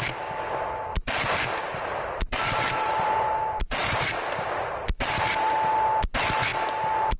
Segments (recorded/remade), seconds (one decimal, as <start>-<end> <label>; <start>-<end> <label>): 0.0-0.9 recorded; 0.9-5.2 remade; 5.2-7.2 recorded